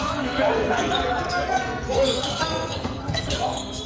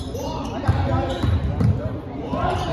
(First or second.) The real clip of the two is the second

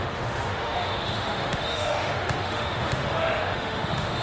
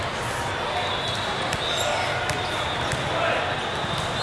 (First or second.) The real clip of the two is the second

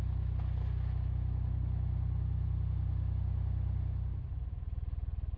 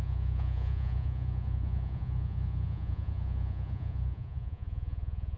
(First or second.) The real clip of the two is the first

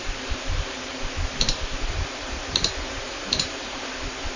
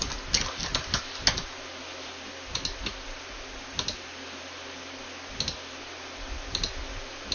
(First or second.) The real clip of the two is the second